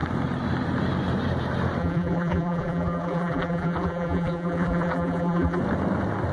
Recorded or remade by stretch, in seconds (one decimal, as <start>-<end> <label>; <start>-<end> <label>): 0.0-1.8 recorded; 1.8-5.6 remade; 5.6-6.3 recorded